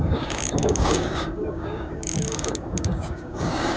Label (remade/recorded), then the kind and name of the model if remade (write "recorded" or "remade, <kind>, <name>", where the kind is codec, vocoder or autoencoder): remade, codec, DAC